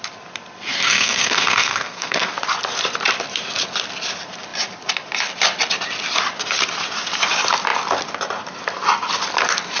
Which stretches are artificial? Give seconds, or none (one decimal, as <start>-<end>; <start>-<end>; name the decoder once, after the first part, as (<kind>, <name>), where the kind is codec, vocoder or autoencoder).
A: 0.7-2.3 (codec, SNAC)